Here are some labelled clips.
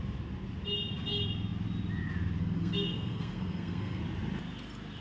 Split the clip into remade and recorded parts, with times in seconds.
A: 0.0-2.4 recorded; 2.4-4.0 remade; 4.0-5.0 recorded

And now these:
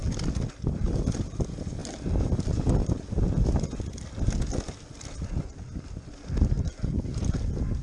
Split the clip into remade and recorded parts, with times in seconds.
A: 0.0-0.8 recorded; 0.8-1.8 remade; 1.8-5.2 recorded; 5.2-7.8 remade

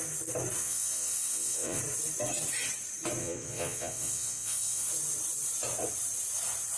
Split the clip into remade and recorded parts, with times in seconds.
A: 0.0-0.6 recorded; 0.6-1.8 remade; 1.8-3.2 recorded; 3.2-4.9 remade; 4.9-6.8 recorded

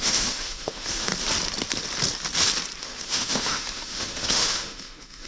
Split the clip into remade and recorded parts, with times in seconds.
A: 0.0-1.1 remade; 1.1-2.8 recorded; 2.8-5.3 remade

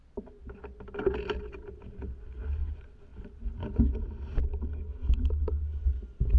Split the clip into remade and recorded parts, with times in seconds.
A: 0.0-6.4 recorded

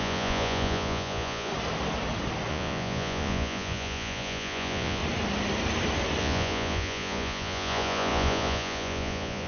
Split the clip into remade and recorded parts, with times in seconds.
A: 0.0-1.5 remade; 1.5-2.5 recorded; 2.5-5.0 remade; 5.0-6.2 recorded; 6.2-9.5 remade